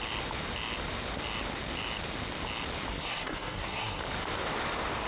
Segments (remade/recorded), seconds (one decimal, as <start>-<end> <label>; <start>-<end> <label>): 0.0-2.9 recorded; 2.9-4.0 remade; 4.0-5.1 recorded